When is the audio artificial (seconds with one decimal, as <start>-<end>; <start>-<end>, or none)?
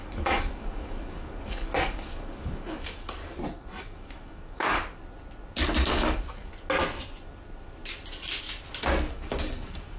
0.0-3.2; 3.8-4.8; 5.8-6.5; 9.1-10.0